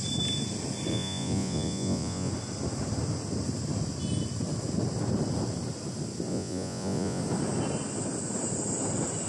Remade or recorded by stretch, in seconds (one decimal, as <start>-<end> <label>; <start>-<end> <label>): 0.0-0.9 recorded; 0.9-2.3 remade; 2.3-6.3 recorded; 6.3-7.2 remade; 7.2-9.3 recorded